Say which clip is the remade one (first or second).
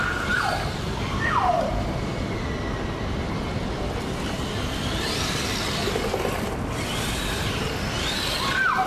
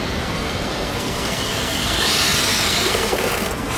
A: second